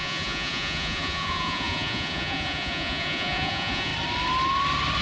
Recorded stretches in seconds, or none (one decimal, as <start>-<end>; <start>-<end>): 3.9-5.0

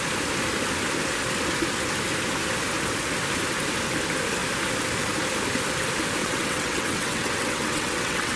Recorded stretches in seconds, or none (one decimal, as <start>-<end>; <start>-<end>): 0.0-6.2

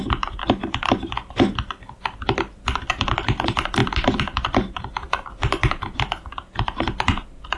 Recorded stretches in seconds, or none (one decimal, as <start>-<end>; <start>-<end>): 1.5-2.9

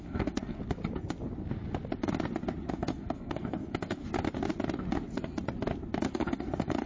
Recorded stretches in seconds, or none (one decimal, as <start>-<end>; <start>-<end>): 0.6-2.7; 4.0-6.1

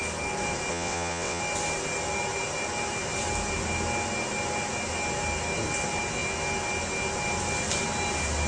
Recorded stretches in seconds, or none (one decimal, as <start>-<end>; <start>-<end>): 0.0-0.7; 1.4-8.5

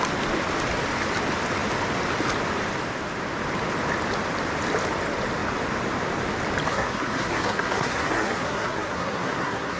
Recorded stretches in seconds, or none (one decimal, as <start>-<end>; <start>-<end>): 0.0-6.7

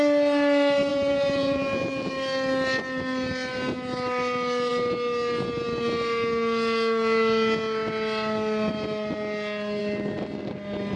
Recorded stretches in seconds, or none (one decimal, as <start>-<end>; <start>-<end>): 0.0-0.9; 2.1-11.0

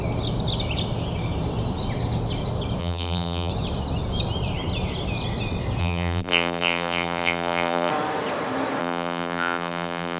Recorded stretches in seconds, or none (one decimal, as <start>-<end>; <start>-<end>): 0.0-2.8; 3.5-5.8; 7.9-8.8